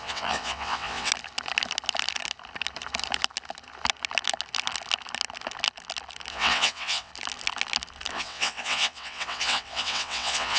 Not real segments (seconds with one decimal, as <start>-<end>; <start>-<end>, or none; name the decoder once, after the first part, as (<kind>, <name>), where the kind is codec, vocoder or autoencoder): 0.0-1.1 (vocoder, WaveNeXt); 6.3-7.1; 8.1-10.6